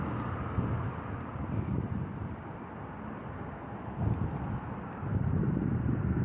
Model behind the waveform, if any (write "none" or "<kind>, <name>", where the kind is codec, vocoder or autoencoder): none